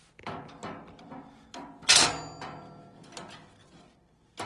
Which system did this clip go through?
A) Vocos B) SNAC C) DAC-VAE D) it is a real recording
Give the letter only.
D